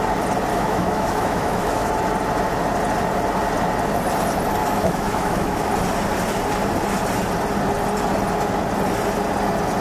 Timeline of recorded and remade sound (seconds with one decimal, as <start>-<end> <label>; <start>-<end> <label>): 0.0-0.5 recorded; 0.5-1.9 remade; 1.9-4.6 recorded; 4.6-5.7 remade; 5.7-9.8 recorded

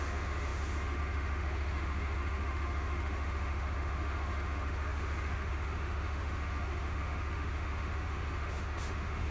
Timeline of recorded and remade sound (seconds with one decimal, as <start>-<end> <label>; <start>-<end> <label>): 0.0-9.3 remade

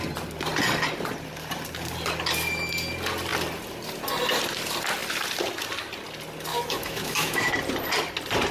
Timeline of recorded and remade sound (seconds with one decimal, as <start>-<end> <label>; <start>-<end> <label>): 0.0-6.5 recorded; 6.5-7.5 remade; 7.5-8.5 recorded

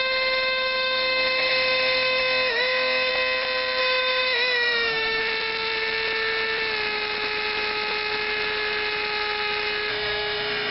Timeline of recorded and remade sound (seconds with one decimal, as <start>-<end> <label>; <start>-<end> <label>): 0.0-3.1 remade; 3.1-3.8 recorded; 3.8-5.2 remade; 5.2-9.9 recorded; 9.9-10.7 remade